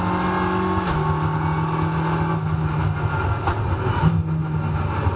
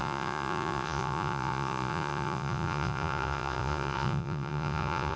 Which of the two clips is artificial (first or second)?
second